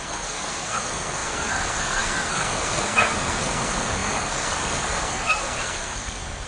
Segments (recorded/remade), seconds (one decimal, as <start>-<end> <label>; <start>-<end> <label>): 0.0-6.5 remade